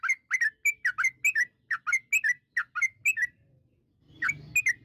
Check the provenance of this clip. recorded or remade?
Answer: recorded